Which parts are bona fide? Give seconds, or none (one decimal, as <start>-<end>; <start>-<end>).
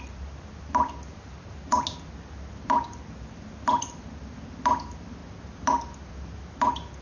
0.0-7.0